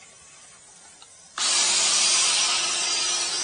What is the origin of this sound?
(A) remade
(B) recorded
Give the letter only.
A